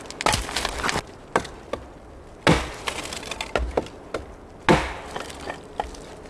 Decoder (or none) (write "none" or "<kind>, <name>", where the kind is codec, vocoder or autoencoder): none